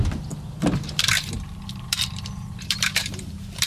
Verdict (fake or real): fake